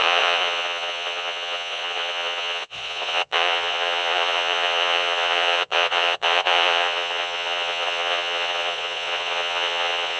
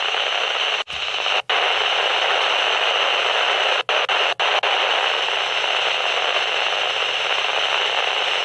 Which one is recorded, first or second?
second